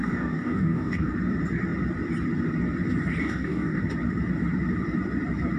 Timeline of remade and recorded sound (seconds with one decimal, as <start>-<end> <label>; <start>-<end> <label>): 0.0-1.1 remade; 1.1-3.2 recorded; 3.2-3.8 remade; 3.8-5.6 recorded

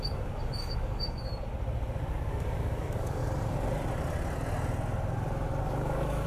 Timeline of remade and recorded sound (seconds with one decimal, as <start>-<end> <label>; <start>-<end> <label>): 0.0-1.3 remade; 1.3-2.1 recorded; 2.1-3.2 remade; 3.2-5.6 recorded; 5.6-6.3 remade

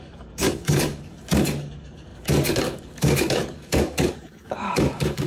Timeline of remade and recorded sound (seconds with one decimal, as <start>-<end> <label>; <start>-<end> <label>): 0.0-5.3 remade

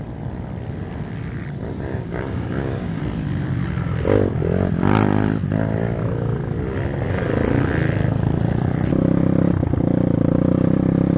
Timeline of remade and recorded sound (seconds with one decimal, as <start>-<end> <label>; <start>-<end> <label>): 0.0-1.9 recorded; 1.9-3.0 remade; 3.0-11.2 recorded

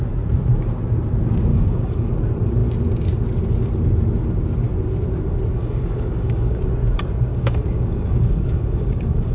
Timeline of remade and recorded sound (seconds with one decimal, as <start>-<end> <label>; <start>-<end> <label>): 0.0-1.5 recorded; 1.5-2.1 remade; 2.1-5.6 recorded; 5.6-6.6 remade; 6.6-7.3 recorded; 7.3-9.3 remade

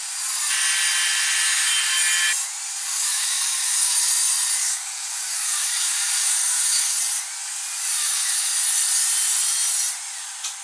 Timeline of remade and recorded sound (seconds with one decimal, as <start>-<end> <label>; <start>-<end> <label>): 0.0-2.9 recorded; 2.9-3.9 remade; 3.9-4.6 recorded; 4.6-7.0 remade; 7.0-8.0 recorded; 8.0-8.5 remade; 8.5-10.6 recorded

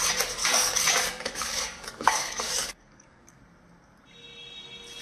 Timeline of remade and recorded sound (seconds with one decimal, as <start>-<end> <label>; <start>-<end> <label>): 0.0-0.4 recorded; 0.4-3.4 remade; 3.4-5.0 recorded